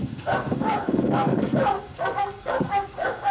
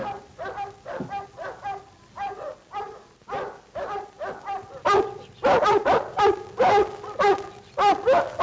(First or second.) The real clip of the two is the second